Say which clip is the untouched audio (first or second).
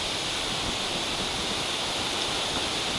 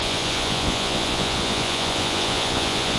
first